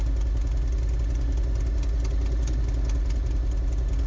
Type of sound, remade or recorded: recorded